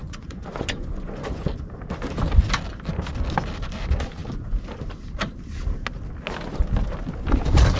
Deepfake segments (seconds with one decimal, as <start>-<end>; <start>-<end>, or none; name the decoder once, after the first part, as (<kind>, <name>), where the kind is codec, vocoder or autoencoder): 0.0-1.4 (vocoder, Vocos)